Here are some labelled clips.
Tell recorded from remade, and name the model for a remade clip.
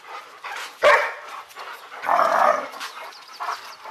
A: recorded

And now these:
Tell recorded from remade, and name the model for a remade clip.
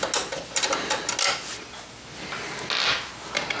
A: recorded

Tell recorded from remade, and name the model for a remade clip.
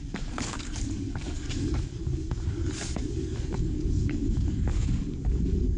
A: remade, codec, DAC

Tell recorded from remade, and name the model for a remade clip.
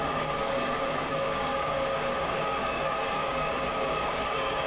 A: remade, codec, DAC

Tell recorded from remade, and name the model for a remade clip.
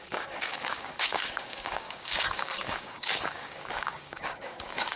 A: remade, codec, DAC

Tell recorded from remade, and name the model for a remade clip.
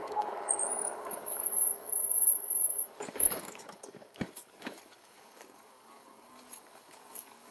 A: remade, codec, DAC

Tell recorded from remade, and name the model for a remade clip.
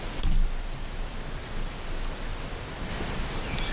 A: recorded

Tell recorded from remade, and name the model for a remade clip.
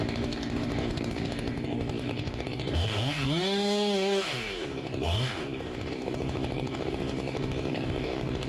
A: remade, codec, DAC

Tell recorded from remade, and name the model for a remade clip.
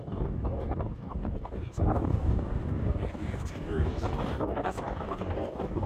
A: remade, codec, DAC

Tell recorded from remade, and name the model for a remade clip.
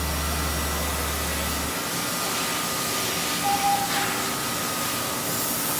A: recorded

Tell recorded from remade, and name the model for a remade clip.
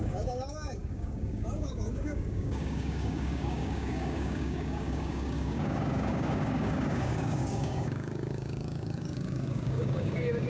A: remade, codec, DAC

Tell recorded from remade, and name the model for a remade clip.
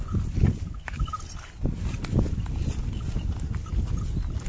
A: recorded